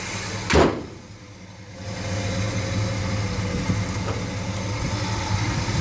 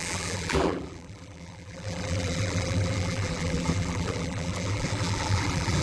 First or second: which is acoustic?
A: first